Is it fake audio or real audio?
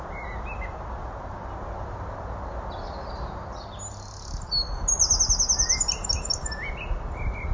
real